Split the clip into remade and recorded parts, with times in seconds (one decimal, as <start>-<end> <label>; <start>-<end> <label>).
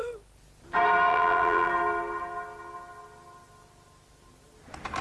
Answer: 0.0-1.1 recorded; 1.1-1.7 remade; 1.7-5.0 recorded